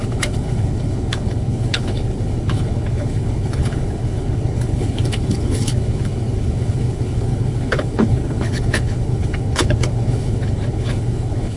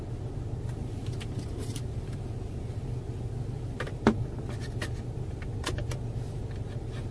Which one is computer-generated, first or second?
first